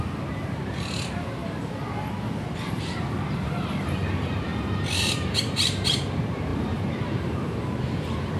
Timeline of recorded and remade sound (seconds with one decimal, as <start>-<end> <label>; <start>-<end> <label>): 0.0-1.4 remade; 1.4-2.2 recorded; 2.2-8.4 remade